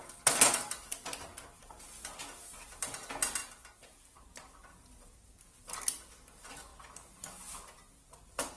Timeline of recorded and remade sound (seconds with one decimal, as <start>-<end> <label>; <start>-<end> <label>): 0.0-8.6 recorded